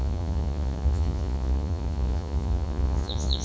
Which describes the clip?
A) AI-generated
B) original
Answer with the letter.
A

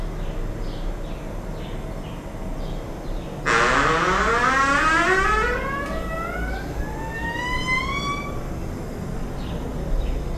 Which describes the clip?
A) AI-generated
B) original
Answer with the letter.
B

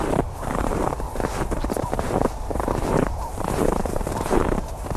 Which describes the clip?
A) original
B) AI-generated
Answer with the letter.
B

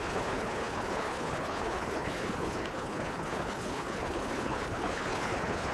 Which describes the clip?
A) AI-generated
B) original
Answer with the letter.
A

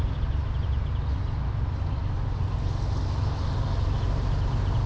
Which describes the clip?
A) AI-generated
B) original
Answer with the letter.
B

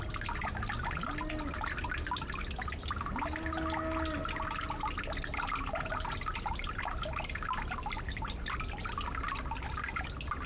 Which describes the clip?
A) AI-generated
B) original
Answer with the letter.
B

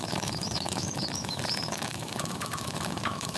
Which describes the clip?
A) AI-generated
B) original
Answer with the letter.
A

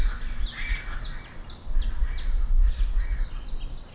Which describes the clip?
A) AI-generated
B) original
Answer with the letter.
B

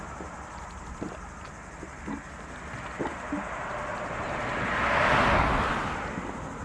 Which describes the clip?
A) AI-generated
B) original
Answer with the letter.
B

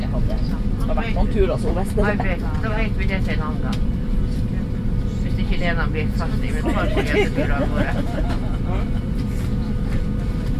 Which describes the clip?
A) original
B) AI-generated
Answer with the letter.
A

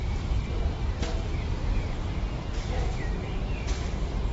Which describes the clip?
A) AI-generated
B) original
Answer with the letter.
B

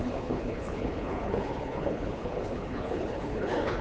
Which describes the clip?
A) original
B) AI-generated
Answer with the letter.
B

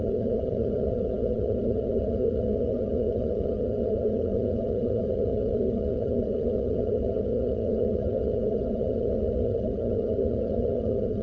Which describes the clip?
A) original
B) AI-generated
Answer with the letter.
B